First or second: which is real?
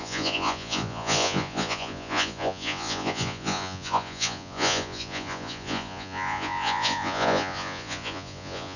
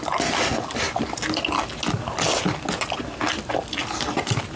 second